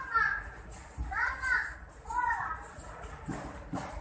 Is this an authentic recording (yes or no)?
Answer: no